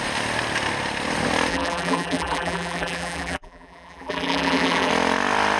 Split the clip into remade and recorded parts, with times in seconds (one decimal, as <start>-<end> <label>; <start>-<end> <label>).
0.0-1.5 recorded; 1.5-4.9 remade; 4.9-5.6 recorded